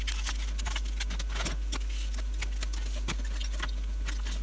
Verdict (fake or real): real